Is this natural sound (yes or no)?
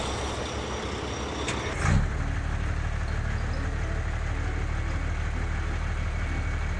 yes